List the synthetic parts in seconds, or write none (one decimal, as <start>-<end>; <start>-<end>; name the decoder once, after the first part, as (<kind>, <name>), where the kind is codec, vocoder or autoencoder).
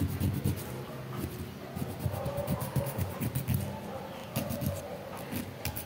2.6-3.1 (autoencoder, DAC-VAE)